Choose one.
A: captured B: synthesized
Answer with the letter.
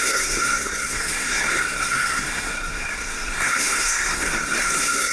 B